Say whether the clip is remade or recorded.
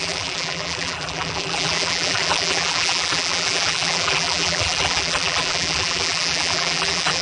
remade